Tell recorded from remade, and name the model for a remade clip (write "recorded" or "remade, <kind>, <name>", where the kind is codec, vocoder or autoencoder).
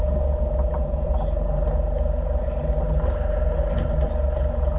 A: recorded